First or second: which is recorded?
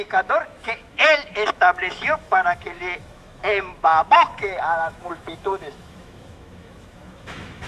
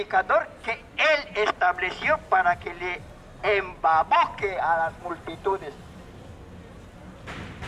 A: second